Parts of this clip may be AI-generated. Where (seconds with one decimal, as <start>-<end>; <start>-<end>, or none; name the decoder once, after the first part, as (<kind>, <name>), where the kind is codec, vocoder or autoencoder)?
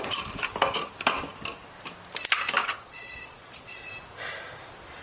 2.6-3.9 (vocoder, Vocos)